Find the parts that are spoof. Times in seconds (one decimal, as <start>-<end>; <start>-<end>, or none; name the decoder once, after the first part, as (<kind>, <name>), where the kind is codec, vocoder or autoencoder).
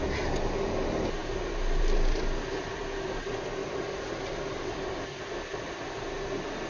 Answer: none